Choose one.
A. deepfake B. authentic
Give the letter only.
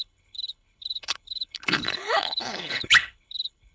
A